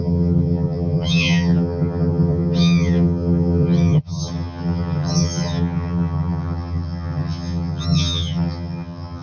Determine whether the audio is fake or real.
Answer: fake